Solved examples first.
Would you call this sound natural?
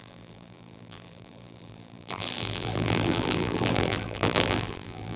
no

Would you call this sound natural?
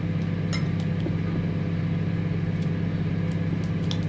yes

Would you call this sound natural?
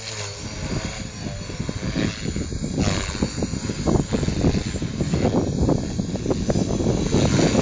yes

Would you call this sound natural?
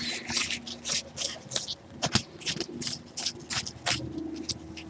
yes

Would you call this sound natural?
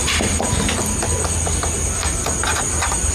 yes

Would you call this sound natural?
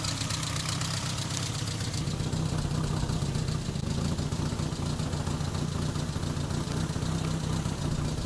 yes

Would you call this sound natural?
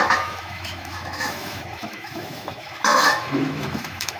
no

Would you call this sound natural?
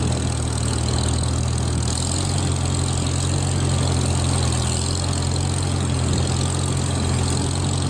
yes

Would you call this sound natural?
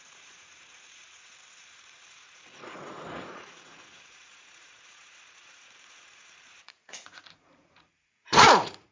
no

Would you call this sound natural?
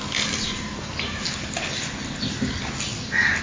yes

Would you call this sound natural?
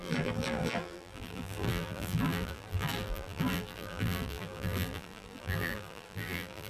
no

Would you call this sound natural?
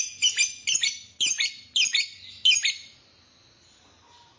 yes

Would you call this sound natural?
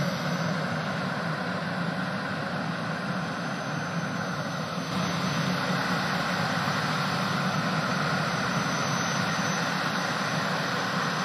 yes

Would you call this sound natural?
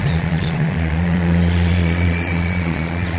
no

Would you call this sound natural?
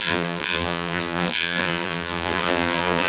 no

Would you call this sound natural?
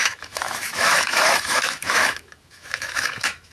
no